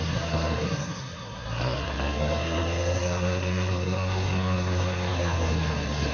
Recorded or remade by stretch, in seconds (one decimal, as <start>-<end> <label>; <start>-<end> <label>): 0.0-6.1 remade